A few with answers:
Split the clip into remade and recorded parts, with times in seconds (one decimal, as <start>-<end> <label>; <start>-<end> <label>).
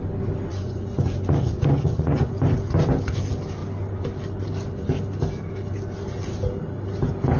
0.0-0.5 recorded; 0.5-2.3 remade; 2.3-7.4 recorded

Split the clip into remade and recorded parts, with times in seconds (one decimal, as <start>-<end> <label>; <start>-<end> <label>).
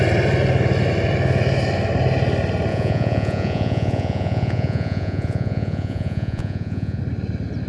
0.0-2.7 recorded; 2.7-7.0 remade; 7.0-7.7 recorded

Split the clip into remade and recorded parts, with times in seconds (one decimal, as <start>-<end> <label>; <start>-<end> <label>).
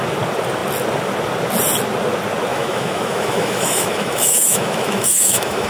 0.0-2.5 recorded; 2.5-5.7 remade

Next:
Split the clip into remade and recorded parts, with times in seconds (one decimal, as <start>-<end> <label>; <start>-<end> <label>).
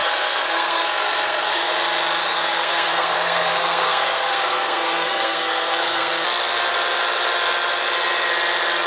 0.0-1.7 remade; 1.7-2.2 recorded; 2.2-6.1 remade; 6.1-8.9 recorded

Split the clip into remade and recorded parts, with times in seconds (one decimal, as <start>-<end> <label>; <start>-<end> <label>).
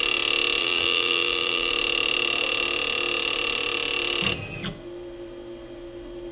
0.0-0.6 recorded; 0.6-1.7 remade; 1.7-6.3 recorded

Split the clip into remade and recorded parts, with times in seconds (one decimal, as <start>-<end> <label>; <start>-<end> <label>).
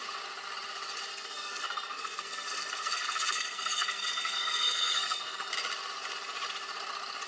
0.0-1.1 recorded; 1.1-5.5 remade; 5.5-7.3 recorded